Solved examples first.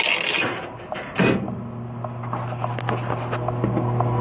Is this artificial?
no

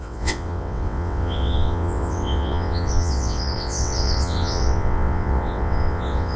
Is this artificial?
yes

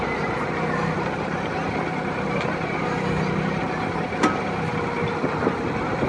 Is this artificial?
no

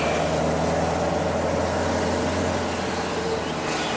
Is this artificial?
no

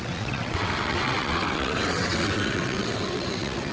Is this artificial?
yes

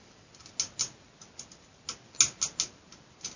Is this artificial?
no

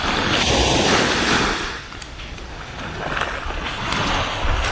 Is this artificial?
no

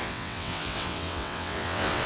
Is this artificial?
yes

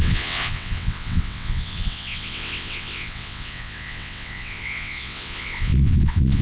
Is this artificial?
yes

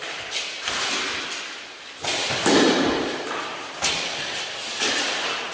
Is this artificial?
no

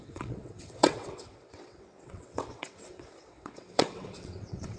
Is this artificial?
yes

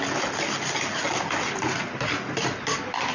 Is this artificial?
no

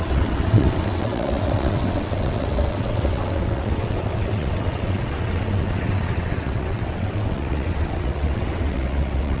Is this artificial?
yes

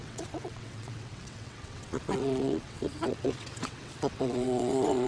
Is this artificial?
yes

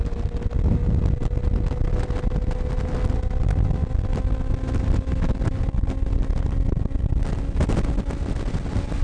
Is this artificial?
no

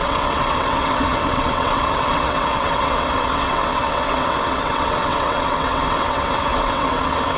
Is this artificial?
yes